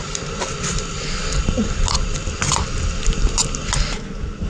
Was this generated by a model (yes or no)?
no